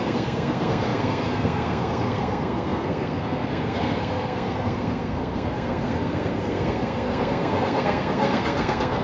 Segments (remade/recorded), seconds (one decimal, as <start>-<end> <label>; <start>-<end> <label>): 0.0-9.0 remade